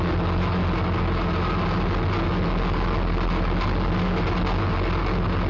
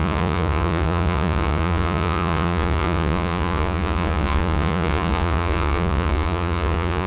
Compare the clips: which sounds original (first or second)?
first